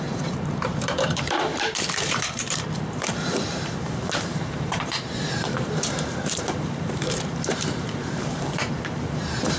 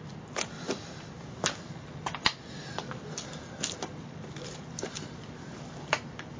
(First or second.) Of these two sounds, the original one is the second